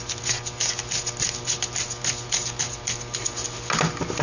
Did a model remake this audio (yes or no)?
no